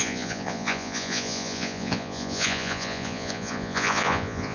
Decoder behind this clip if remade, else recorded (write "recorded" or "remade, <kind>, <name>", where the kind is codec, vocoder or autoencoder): remade, vocoder, Vocos